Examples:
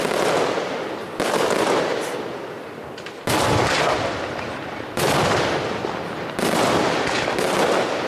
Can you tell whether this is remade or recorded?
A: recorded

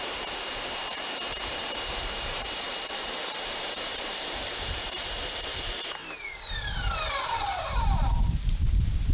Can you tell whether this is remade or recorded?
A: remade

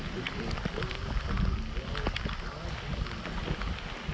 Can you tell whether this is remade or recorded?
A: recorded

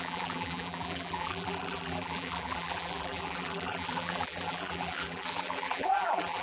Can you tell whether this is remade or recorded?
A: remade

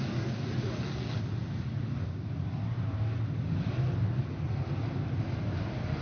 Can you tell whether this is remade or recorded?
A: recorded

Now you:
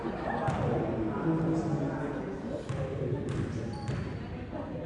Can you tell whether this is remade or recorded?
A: recorded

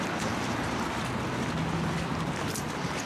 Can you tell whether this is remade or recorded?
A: recorded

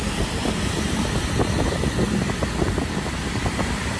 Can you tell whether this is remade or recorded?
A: recorded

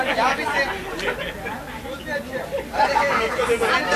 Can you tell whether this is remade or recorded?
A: recorded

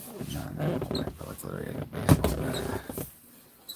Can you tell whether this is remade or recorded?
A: recorded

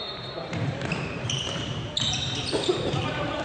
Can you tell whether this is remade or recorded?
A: remade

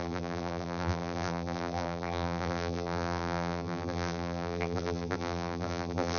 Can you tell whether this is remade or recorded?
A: remade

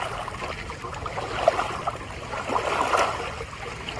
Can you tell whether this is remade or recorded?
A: recorded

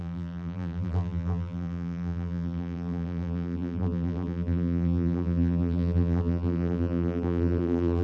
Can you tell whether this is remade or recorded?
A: remade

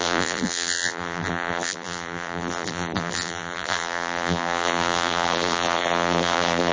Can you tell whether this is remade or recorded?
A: remade